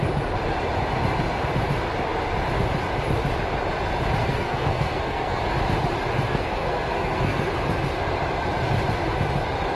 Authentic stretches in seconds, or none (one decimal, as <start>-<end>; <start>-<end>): 0.0-4.2; 5.4-6.3; 7.5-9.8